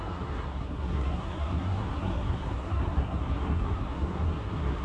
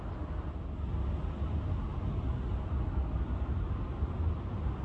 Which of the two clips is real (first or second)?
second